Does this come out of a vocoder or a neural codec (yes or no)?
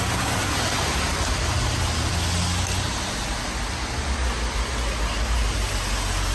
no